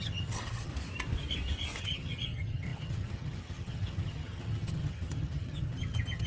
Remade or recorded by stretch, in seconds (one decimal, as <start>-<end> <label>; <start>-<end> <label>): 0.0-0.7 remade; 0.7-1.8 recorded; 1.8-6.3 remade